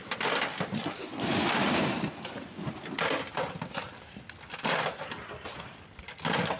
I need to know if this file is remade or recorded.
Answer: recorded